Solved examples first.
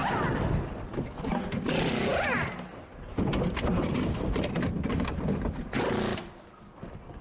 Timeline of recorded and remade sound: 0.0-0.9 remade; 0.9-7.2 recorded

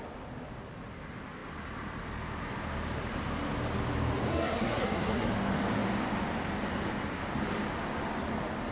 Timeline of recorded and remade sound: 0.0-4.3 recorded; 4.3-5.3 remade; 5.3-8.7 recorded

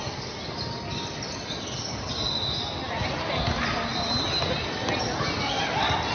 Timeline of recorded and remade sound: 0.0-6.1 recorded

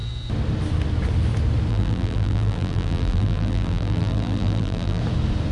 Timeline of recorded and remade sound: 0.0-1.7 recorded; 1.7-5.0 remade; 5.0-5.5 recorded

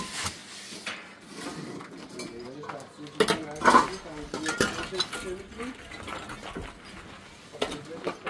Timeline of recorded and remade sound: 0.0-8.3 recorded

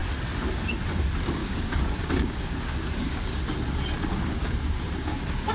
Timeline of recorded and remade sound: 0.0-1.4 recorded; 1.4-2.9 remade; 2.9-4.1 recorded; 4.1-5.5 remade